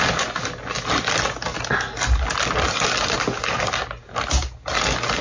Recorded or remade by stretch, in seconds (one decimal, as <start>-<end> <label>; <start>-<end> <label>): 0.0-5.2 recorded